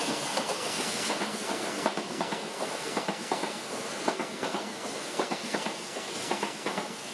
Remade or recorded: remade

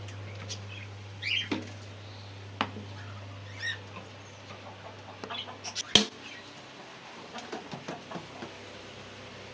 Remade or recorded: recorded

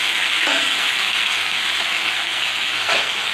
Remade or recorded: remade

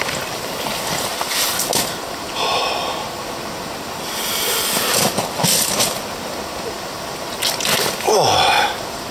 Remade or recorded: recorded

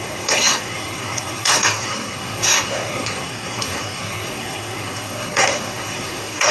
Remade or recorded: remade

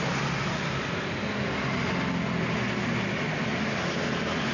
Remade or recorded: recorded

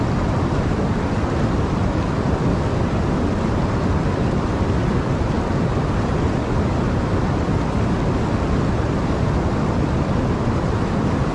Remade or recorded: recorded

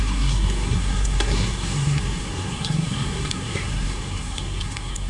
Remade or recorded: remade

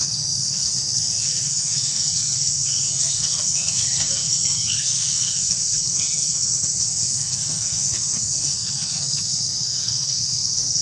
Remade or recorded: remade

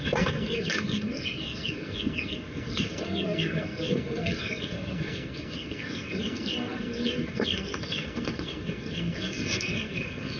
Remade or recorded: remade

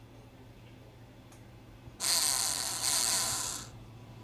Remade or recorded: recorded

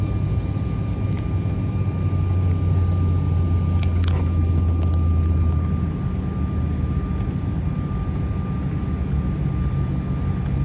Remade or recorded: recorded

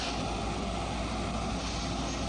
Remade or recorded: recorded